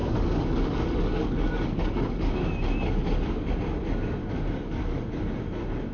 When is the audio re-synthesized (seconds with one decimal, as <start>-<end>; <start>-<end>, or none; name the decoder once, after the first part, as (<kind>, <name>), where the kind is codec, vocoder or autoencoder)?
0.0-3.5 (codec, DAC); 4.2-5.1